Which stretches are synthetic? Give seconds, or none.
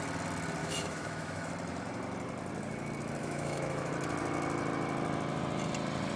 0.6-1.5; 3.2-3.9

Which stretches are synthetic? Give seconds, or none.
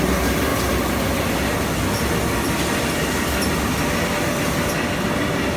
none